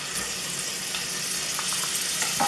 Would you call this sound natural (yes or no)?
yes